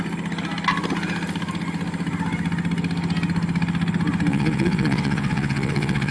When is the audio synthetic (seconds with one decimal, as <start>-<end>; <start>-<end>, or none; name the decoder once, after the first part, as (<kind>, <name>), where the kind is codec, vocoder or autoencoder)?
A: 4.3-6.1 (vocoder, WaveNeXt)